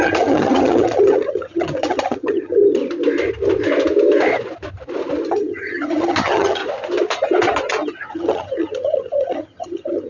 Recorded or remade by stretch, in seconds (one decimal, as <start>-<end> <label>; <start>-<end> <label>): 0.0-2.8 remade; 2.8-5.3 recorded; 5.3-6.6 remade; 6.6-8.1 recorded; 8.1-10.1 remade